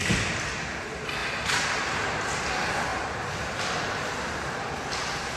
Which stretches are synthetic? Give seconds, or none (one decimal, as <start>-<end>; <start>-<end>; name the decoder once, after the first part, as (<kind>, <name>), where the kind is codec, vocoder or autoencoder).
none